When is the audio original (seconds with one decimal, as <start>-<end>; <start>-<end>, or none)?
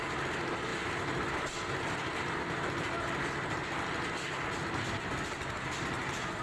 0.0-6.4